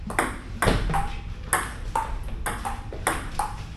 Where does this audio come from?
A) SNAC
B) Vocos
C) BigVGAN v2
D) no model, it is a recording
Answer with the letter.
D